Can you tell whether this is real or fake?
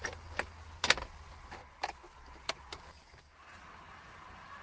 real